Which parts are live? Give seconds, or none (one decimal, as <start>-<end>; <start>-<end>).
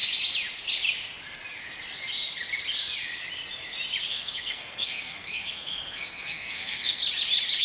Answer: 0.0-4.1; 7.0-7.6